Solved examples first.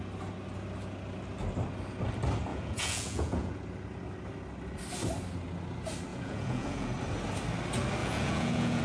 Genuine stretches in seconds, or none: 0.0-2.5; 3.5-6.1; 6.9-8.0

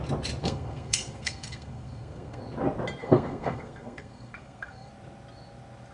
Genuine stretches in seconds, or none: 0.0-0.4; 2.4-3.0; 4.9-5.9

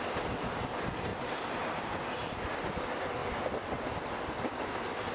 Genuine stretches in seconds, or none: 0.0-1.1; 2.4-5.1